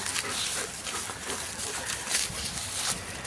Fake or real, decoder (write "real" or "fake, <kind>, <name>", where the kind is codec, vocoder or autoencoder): real